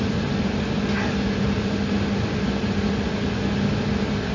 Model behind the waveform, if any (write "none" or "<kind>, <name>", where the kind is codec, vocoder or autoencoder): none